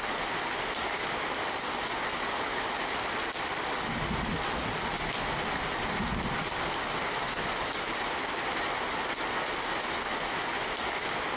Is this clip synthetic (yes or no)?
no